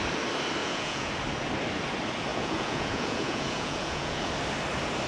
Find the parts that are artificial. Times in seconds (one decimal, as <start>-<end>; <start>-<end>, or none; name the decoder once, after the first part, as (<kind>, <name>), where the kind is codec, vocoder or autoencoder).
0.6-1.1 (vocoder, Vocos); 2.3-4.3